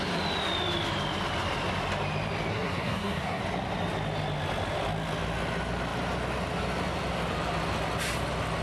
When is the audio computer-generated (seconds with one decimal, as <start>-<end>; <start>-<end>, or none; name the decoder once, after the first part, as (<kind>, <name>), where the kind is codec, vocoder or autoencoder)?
2.5-3.4 (codec, SNAC)